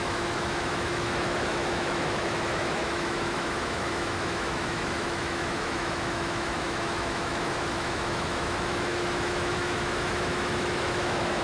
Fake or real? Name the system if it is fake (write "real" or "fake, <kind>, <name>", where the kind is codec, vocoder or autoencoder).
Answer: fake, autoencoder, DAC-VAE